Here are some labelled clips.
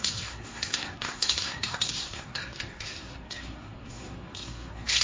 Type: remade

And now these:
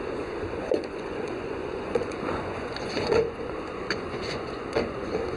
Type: remade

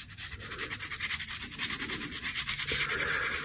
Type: recorded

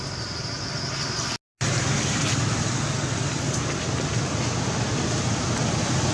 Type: recorded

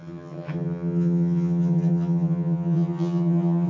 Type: remade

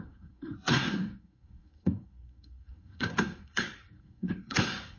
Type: remade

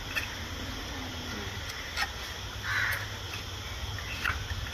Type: recorded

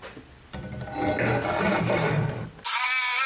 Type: recorded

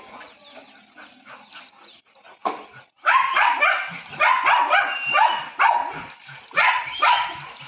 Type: recorded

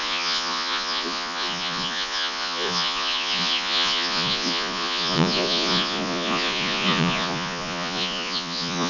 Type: remade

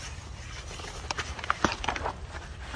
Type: recorded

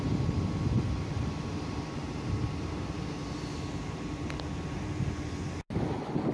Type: recorded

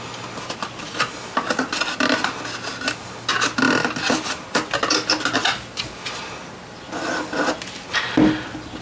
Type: recorded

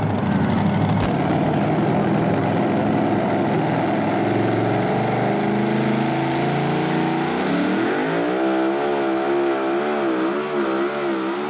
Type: recorded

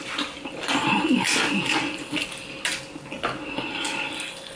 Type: recorded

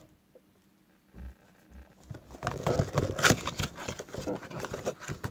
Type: recorded